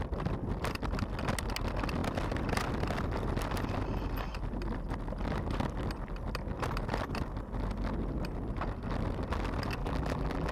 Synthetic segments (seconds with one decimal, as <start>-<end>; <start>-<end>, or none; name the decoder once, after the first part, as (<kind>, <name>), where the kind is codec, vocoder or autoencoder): 9.8-10.5 (vocoder, BigVGAN v2)